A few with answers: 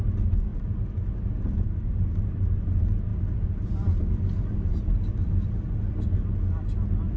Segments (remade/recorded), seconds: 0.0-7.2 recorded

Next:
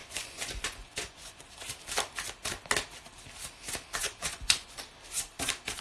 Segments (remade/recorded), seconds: 0.0-1.5 remade; 1.5-4.0 recorded; 4.0-4.8 remade; 4.8-5.8 recorded

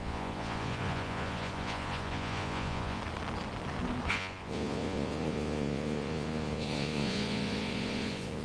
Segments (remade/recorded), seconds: 0.0-3.0 remade; 3.0-4.1 recorded; 4.1-8.4 remade

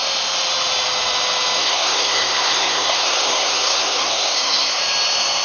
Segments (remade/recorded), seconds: 0.0-1.6 recorded; 1.6-4.8 remade; 4.8-5.4 recorded

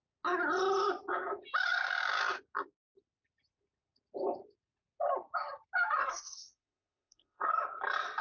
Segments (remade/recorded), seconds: 0.0-6.0 recorded; 6.0-7.5 remade; 7.5-8.2 recorded

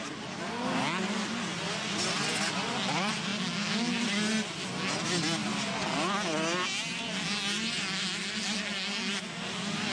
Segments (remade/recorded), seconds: 0.0-9.9 recorded